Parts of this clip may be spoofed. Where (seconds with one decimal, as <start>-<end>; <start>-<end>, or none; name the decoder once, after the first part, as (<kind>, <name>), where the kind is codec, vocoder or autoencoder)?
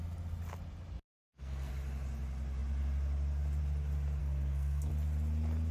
1.1-1.7 (codec, SNAC); 4.2-4.9